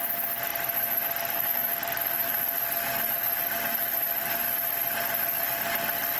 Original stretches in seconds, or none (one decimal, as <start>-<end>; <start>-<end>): 0.0-6.2